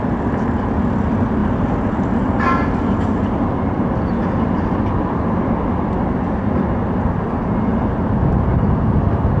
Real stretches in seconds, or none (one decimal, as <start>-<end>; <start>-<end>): 0.0-9.4